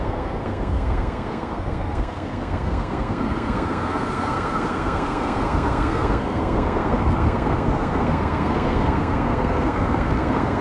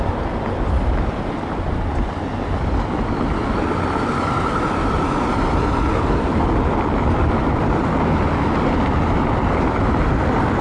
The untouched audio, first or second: second